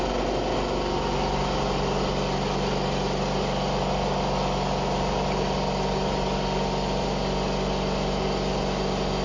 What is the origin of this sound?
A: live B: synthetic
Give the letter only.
A